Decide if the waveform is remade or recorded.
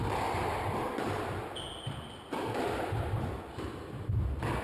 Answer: recorded